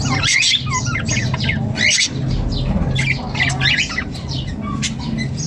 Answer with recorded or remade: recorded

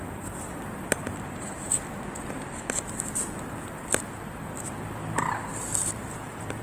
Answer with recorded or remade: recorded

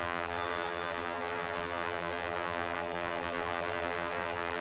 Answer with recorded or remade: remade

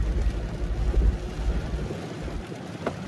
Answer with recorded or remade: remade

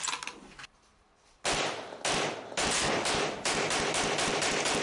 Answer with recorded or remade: recorded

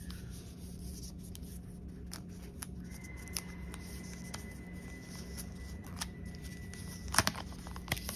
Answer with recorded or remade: recorded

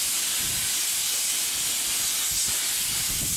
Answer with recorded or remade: recorded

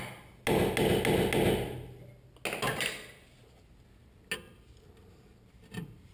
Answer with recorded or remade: recorded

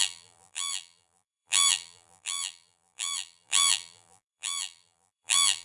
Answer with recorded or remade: remade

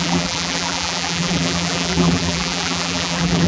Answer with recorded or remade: remade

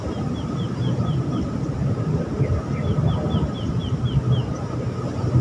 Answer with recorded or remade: recorded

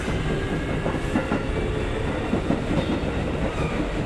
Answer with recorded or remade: recorded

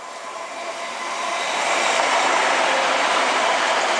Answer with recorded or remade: remade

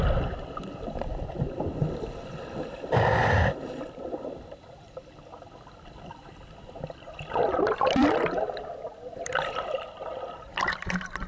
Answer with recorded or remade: remade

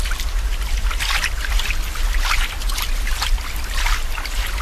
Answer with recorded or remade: recorded